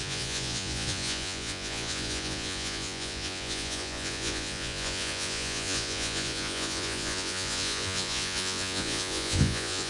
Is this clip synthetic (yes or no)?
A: yes